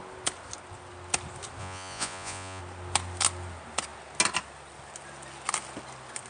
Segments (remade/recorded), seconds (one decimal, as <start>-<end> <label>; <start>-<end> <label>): 0.0-1.6 recorded; 1.6-2.6 remade; 2.6-6.3 recorded